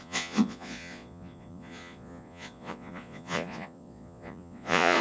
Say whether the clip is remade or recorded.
remade